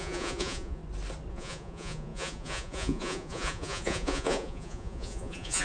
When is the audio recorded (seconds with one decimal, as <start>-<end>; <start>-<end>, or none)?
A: 0.8-1.3